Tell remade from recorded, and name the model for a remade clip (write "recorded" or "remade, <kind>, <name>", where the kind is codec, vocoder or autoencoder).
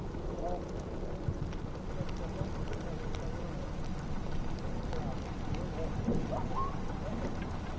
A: recorded